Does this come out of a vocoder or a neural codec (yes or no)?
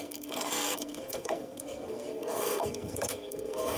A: yes